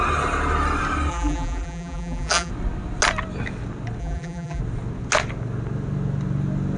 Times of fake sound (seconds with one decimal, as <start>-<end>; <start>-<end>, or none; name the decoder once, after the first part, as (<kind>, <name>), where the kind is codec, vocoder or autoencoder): 1.1-2.5 (vocoder, BigVGAN v2); 4.0-4.6